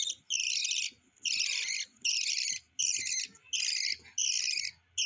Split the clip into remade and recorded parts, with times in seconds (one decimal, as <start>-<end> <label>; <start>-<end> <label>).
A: 0.0-5.1 recorded

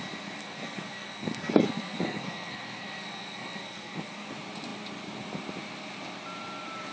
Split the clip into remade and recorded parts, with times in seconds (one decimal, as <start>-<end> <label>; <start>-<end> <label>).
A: 0.0-0.4 recorded; 0.4-4.3 remade; 4.3-6.9 recorded

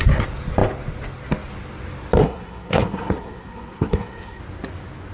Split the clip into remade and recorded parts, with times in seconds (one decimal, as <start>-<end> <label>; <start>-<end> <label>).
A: 0.0-2.2 recorded; 2.2-4.4 remade; 4.4-5.1 recorded

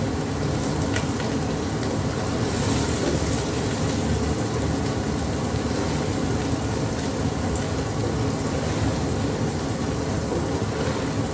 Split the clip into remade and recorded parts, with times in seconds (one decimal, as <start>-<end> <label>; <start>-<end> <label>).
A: 0.0-11.3 recorded

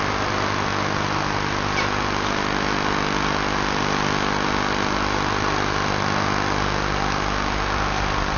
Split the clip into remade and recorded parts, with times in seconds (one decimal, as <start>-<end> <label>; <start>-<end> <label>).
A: 0.0-8.4 recorded

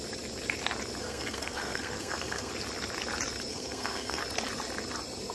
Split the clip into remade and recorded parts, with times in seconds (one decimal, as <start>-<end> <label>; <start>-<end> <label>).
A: 0.0-1.0 recorded; 1.0-2.5 remade; 2.5-3.5 recorded; 3.5-4.2 remade; 4.2-5.3 recorded